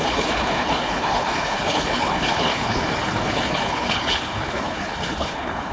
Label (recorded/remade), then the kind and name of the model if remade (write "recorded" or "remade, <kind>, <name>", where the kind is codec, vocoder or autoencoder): remade, codec, HILCodec